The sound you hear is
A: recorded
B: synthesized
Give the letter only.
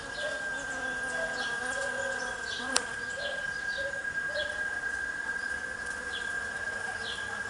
A